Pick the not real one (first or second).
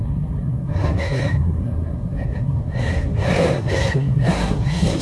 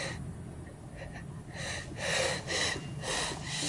first